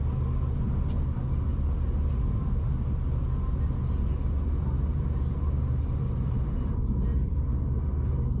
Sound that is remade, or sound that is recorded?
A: recorded